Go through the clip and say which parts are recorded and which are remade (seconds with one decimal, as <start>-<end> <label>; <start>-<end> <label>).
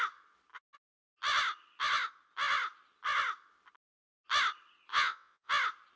0.0-4.9 recorded; 4.9-5.5 remade; 5.5-6.0 recorded